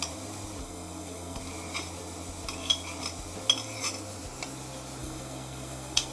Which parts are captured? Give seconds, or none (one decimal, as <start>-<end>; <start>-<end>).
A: 0.0-0.6; 1.4-5.0